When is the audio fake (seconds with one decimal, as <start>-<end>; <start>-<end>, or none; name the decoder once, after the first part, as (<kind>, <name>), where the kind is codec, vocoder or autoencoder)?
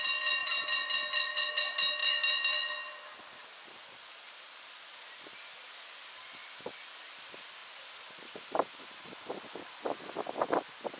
none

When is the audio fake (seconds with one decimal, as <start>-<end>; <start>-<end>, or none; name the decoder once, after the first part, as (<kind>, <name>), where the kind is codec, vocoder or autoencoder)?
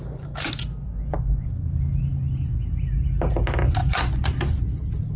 0.8-1.5 (vocoder, Vocos); 3.8-4.8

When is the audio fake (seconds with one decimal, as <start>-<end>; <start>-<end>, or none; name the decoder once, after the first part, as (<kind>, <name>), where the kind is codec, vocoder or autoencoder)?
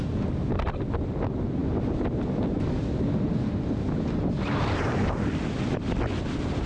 none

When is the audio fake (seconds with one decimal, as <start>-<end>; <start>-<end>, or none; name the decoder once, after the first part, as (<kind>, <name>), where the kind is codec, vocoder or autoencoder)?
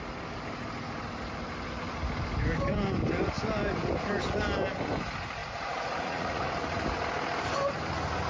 5.4-6.5 (vocoder, Vocos)